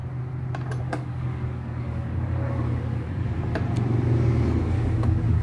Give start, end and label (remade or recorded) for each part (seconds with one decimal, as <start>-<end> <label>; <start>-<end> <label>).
0.0-0.8 recorded; 0.8-3.3 remade; 3.3-4.6 recorded; 4.6-5.4 remade